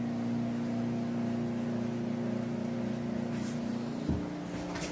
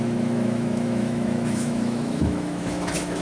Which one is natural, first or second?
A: first